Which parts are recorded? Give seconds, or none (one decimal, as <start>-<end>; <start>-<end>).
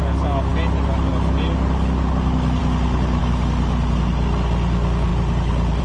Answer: 0.0-5.8